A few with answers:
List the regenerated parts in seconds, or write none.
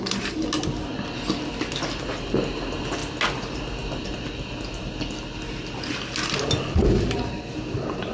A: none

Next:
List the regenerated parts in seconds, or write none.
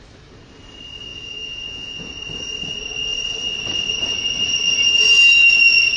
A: 1.1-2.1 (vocoder, Vocos)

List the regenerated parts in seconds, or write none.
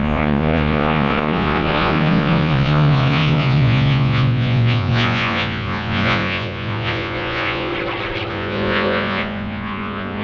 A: 0.0-7.7 (vocoder, Vocos); 8.3-10.2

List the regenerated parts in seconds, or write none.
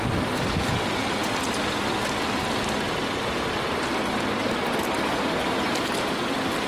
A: none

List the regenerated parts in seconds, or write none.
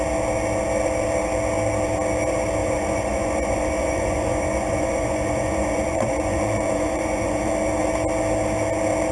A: 2.6-7.5 (vocoder, Vocos)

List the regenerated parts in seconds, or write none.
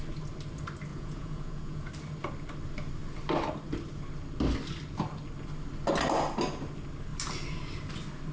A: 0.9-1.9 (vocoder, Vocos)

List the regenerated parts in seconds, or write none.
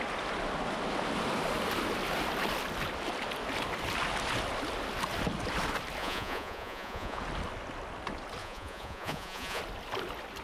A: 6.0-7.2 (vocoder, Vocos); 8.4-9.6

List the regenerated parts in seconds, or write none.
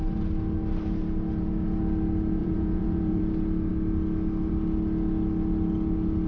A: 2.4-3.2 (vocoder, Vocos)